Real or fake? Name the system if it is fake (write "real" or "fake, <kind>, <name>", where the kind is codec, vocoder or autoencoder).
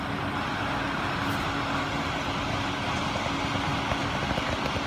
real